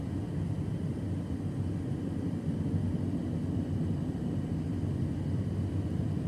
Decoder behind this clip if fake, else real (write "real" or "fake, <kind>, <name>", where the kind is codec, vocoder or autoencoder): real